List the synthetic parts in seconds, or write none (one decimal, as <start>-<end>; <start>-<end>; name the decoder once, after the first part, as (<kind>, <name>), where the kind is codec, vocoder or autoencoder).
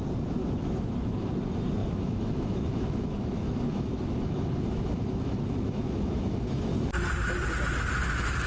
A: 0.4-1.3 (autoencoder, DAC-VAE); 1.8-6.7